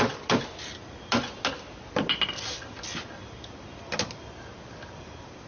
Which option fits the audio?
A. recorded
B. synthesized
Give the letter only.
A